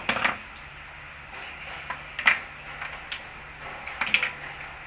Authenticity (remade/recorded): recorded